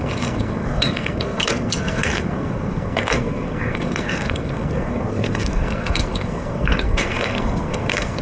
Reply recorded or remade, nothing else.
remade